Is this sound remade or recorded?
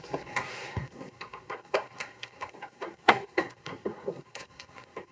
remade